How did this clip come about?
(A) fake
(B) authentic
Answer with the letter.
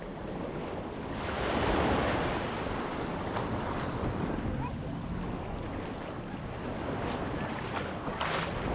B